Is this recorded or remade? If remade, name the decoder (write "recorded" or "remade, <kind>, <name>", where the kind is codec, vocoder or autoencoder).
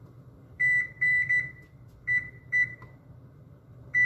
remade, vocoder, BigVGAN v2